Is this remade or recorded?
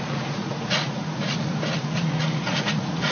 remade